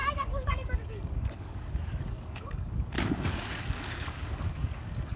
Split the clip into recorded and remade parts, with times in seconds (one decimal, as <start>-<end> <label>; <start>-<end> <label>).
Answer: 0.0-5.2 remade